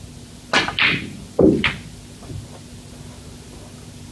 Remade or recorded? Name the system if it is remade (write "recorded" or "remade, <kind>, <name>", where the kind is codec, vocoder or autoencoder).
recorded